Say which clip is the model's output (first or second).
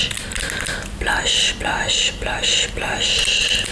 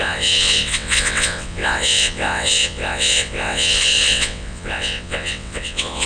second